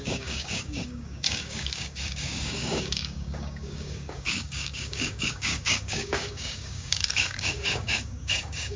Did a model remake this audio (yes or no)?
yes